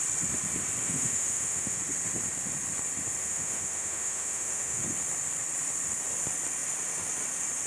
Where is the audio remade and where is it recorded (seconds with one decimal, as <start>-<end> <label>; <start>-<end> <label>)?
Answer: 0.0-0.8 recorded; 0.8-1.8 remade; 1.8-3.2 recorded; 3.2-4.8 remade; 4.8-7.7 recorded